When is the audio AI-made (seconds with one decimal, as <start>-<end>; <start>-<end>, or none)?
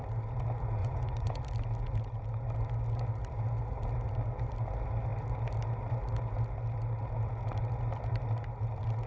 0.8-1.4